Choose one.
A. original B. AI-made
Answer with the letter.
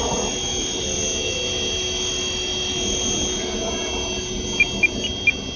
A